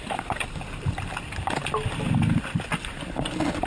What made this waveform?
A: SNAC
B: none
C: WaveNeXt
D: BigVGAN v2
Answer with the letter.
B